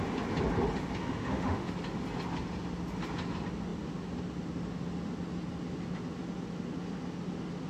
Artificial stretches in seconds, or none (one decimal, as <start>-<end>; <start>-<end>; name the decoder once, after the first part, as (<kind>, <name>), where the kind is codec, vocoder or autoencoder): 1.0-1.7 (autoencoder, DAC-VAE)